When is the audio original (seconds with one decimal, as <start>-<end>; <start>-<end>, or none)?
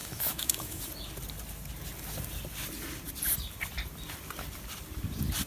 0.8-5.5